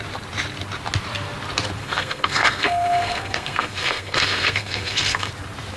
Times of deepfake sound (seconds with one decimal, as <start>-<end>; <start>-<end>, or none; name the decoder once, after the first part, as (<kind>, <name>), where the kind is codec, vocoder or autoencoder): 1.8-5.3 (codec, SNAC)